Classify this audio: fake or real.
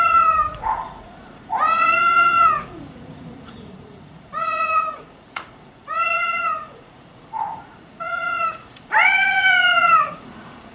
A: fake